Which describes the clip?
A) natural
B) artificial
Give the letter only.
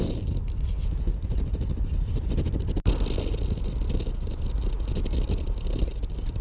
A